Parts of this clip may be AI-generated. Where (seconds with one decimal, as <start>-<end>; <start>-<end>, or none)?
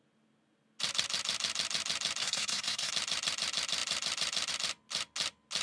2.2-2.9